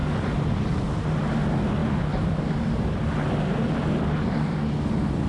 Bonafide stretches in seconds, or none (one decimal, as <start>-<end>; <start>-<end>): 1.4-5.3